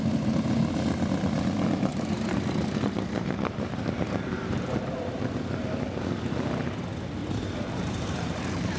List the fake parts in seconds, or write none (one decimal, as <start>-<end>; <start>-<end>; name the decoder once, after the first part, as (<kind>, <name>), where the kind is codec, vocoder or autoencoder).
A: 1.9-5.2 (vocoder, BigVGAN v2); 7.2-8.8